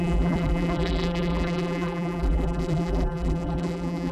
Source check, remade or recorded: remade